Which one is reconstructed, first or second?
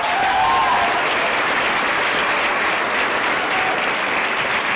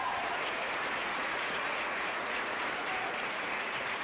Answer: second